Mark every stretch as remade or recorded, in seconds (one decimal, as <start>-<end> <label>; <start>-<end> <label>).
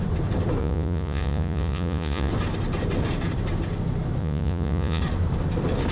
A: 0.0-0.6 recorded; 0.6-2.3 remade; 2.3-4.2 recorded; 4.2-5.0 remade; 5.0-5.9 recorded